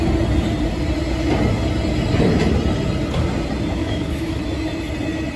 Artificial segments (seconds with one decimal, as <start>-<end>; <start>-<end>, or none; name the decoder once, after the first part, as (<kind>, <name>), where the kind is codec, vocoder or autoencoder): 3.8-4.4 (autoencoder, DAC-VAE)

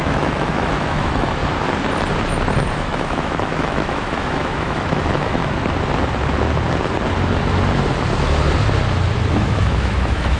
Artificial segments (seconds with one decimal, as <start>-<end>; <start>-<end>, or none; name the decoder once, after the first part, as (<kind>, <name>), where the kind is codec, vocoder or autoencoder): 0.0-1.4 (autoencoder, DAC-VAE); 2.7-5.4; 9.3-10.4

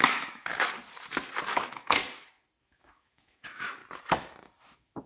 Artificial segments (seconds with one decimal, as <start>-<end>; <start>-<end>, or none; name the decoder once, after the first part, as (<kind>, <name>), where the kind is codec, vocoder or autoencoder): 0.0-0.5 (autoencoder, DAC-VAE); 1.5-2.0; 2.6-3.8; 4.6-5.1

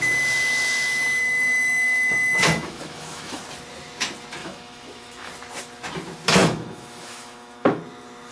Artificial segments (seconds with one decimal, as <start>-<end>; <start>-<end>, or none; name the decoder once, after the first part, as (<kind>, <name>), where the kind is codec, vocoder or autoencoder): 1.2-3.4 (autoencoder, DAC-VAE); 4.4-5.3; 6.4-7.8

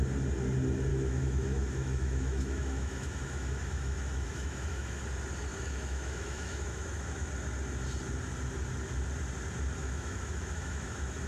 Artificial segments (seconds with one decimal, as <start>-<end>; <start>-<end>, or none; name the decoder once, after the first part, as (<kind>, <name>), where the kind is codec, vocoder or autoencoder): 0.9-5.0 (autoencoder, DAC-VAE); 5.5-7.3; 9.8-11.3

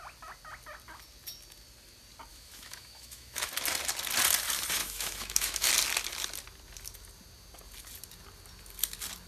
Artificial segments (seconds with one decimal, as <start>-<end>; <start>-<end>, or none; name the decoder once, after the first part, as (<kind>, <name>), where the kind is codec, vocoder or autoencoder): 2.3-3.5 (autoencoder, DAC-VAE); 4.8-5.7